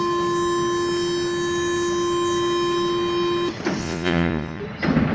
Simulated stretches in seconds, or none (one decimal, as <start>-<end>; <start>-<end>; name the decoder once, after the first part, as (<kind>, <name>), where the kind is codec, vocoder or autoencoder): 3.8-4.6 (vocoder, Vocos)